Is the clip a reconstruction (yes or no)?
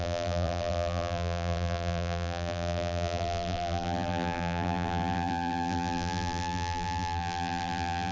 yes